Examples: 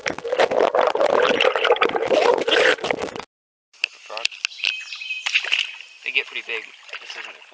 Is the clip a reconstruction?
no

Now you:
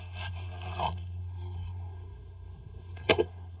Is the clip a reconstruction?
yes